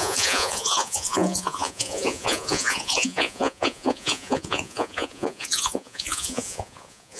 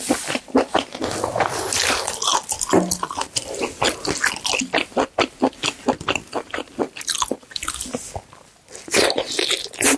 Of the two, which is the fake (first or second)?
first